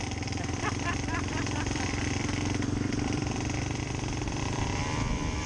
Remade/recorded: remade